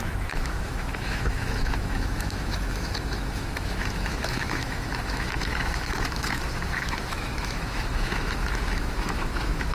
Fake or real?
fake